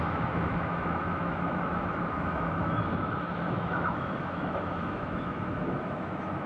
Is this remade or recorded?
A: remade